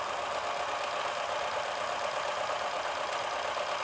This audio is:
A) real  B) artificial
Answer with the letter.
A